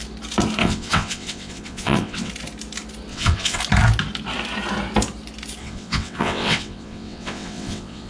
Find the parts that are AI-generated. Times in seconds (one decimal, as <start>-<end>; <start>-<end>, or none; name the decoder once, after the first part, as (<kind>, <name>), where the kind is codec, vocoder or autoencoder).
0.6-2.3 (vocoder, WaveNeXt); 3.1-3.6; 5.6-8.1